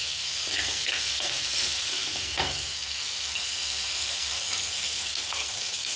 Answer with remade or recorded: remade